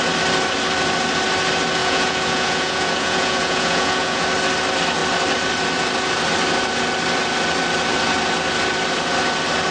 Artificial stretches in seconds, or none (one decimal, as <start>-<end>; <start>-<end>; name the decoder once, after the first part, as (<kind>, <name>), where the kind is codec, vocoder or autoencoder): 1.8-4.2 (vocoder, Vocos)